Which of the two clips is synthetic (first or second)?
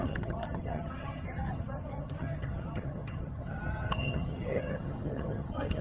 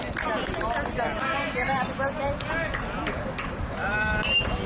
first